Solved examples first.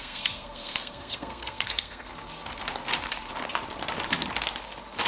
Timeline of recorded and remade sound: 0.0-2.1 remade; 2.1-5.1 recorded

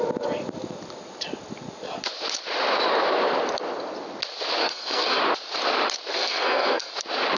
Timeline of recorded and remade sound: 0.0-4.6 recorded; 4.6-5.2 remade; 5.2-6.1 recorded; 6.1-6.9 remade; 6.9-7.4 recorded